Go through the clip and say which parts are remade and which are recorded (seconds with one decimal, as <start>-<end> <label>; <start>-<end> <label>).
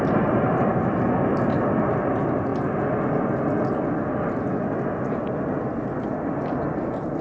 0.0-7.2 recorded